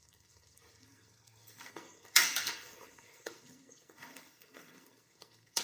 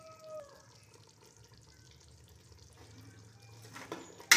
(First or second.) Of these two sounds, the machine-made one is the first